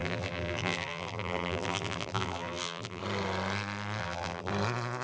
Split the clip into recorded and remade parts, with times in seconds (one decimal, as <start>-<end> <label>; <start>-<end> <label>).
0.0-3.0 remade; 3.0-4.0 recorded; 4.0-4.5 remade; 4.5-5.0 recorded

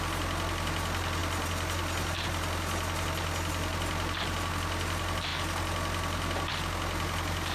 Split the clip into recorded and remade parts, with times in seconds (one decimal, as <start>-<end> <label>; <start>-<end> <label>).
0.0-7.5 recorded

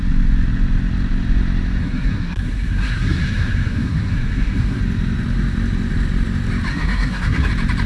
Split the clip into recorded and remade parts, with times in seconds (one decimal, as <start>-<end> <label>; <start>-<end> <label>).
0.0-1.8 recorded; 1.8-4.8 remade; 4.8-6.7 recorded; 6.7-7.5 remade; 7.5-7.9 recorded